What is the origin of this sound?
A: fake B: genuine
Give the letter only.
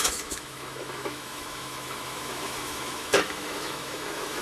A